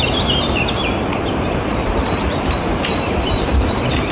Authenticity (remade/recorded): remade